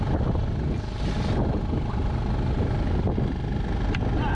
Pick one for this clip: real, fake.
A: real